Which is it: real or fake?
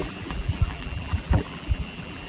fake